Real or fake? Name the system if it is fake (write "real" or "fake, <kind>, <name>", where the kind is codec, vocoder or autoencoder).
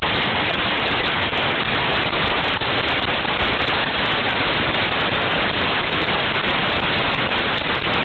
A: real